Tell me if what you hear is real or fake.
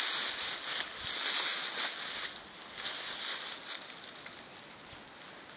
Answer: real